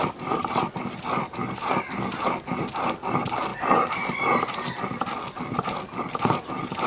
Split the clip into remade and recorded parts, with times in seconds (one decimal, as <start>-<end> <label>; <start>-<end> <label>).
0.0-6.9 recorded

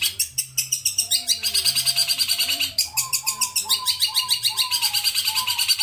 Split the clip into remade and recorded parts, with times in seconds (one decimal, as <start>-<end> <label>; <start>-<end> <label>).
0.0-2.0 recorded; 2.0-3.2 remade; 3.2-5.8 recorded

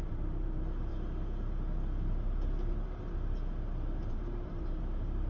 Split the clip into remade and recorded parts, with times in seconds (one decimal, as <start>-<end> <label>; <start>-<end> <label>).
0.0-0.9 remade; 0.9-4.1 recorded; 4.1-5.3 remade

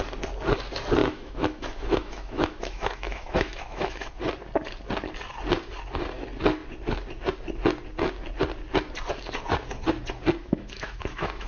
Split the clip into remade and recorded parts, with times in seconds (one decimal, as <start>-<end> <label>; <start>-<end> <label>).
0.0-1.0 recorded; 1.0-4.2 remade; 4.2-10.4 recorded; 10.4-11.5 remade

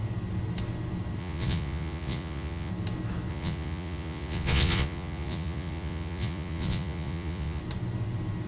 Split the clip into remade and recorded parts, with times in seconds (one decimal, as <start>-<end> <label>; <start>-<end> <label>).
0.0-1.2 recorded; 1.2-2.7 remade; 2.7-3.3 recorded; 3.3-7.6 remade; 7.6-8.5 recorded